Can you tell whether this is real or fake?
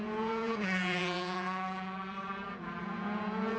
fake